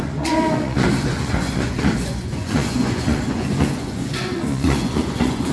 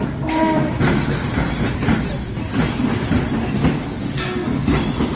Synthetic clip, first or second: first